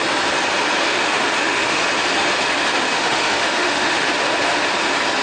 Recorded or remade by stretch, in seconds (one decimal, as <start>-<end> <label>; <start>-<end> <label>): 0.0-0.9 recorded; 0.9-1.8 remade; 1.8-2.7 recorded; 2.7-4.1 remade; 4.1-5.2 recorded